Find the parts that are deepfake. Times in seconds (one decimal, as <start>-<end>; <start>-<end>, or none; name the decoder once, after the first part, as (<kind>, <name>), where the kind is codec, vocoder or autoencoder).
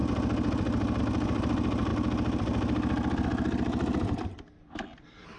none